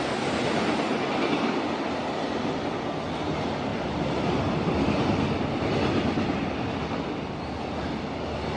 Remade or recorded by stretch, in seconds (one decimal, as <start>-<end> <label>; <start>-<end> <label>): 0.0-8.6 recorded